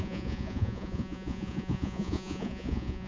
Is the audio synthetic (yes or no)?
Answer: yes